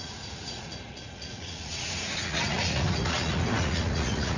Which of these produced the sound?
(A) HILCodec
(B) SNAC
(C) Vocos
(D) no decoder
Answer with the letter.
C